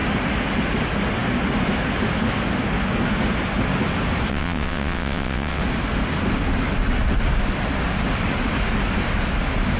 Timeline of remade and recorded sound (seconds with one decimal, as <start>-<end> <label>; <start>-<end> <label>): 0.0-4.3 recorded; 4.3-5.6 remade; 5.6-9.8 recorded